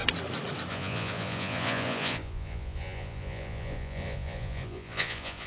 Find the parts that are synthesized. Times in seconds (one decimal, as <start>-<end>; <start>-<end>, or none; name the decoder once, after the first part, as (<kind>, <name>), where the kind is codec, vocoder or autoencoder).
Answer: 0.7-5.5 (vocoder, Vocos)